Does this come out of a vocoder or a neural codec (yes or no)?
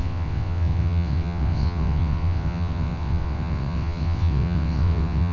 yes